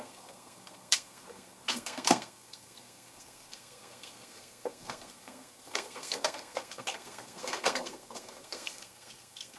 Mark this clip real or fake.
fake